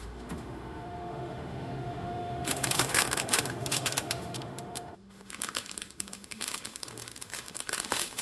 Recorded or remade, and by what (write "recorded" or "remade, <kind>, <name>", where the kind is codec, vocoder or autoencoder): remade, autoencoder, DAC-VAE